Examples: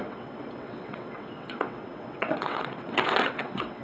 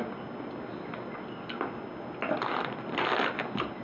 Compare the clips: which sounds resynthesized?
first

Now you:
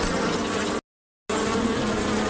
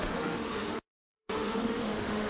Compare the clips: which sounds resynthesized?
second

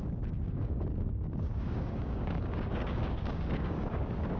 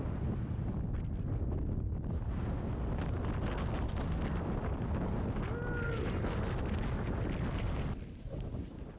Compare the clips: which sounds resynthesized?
first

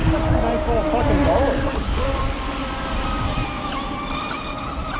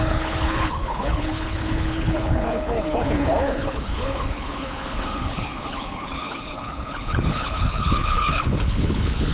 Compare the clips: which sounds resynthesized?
second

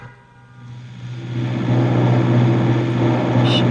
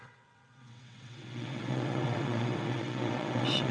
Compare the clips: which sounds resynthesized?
second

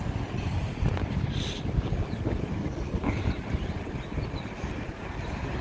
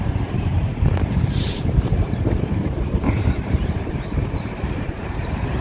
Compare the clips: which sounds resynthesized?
second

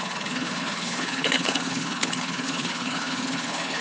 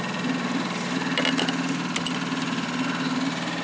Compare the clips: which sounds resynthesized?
first